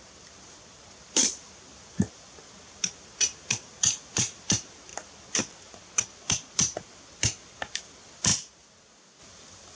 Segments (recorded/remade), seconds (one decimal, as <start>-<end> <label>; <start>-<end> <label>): 0.0-8.3 remade; 8.3-9.2 recorded; 9.2-9.7 remade